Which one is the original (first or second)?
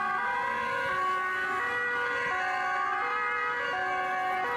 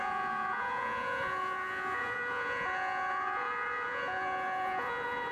first